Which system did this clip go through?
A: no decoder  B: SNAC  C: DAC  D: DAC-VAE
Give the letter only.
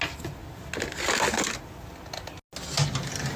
A